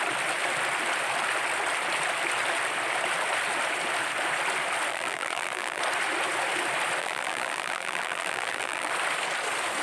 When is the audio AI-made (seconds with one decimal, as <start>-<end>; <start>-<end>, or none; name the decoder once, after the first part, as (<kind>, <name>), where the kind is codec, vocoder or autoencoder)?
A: 4.9-5.8 (vocoder, BigVGAN v2); 7.0-8.9